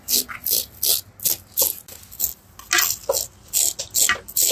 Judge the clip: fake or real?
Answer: real